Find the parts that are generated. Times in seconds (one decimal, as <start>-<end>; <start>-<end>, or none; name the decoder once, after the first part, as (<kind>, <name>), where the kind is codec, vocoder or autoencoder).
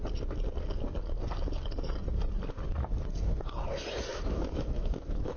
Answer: 4.1-5.4 (autoencoder, DAC-VAE)